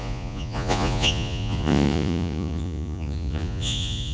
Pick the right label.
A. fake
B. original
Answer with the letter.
A